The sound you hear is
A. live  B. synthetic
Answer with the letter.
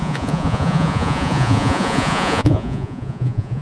B